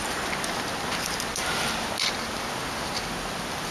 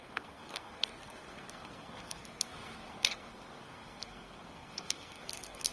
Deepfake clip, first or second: second